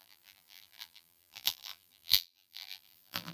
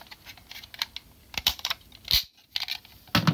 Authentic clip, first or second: second